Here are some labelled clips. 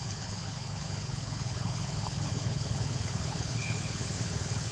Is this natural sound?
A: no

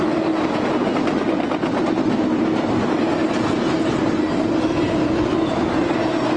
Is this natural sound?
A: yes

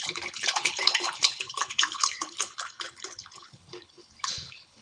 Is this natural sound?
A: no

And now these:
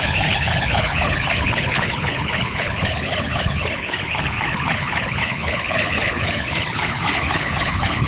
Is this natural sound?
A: no